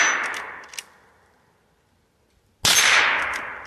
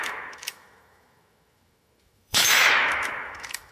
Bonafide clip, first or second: first